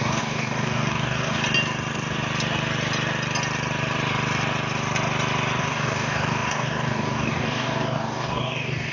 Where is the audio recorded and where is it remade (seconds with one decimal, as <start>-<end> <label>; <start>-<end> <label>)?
0.0-1.4 remade; 1.4-5.6 recorded; 5.6-8.9 remade